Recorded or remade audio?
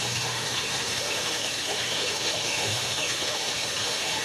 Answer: remade